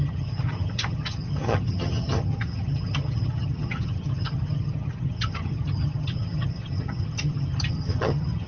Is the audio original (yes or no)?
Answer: no